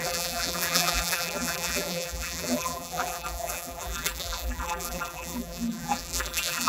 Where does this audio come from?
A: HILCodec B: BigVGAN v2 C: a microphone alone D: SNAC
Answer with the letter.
B